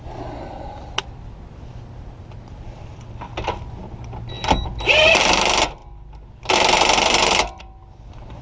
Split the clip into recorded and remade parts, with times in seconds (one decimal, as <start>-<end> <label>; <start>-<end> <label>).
0.0-5.8 recorded; 5.8-7.6 remade; 7.6-8.4 recorded